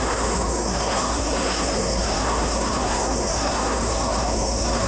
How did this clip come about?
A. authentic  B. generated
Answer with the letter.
B